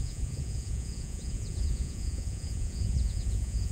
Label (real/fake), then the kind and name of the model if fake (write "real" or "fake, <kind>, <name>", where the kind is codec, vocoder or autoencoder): fake, vocoder, Vocos